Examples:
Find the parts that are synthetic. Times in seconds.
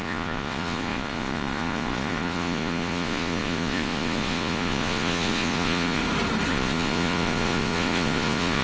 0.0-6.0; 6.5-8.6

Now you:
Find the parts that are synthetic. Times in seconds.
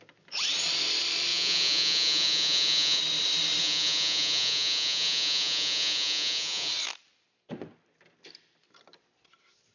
1.3-3.0; 3.6-6.7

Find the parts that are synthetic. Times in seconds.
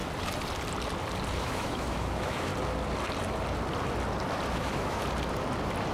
1.4-2.5; 4.5-5.0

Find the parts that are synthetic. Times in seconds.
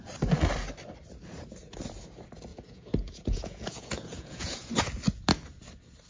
2.5-4.7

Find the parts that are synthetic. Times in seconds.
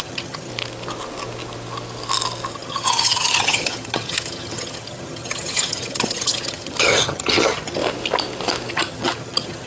0.0-0.5; 2.5-7.8; 8.7-9.7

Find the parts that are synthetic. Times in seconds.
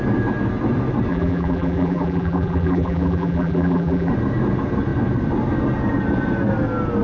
1.1-4.1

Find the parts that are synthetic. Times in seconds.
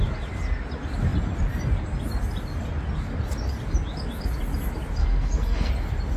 5.0-5.7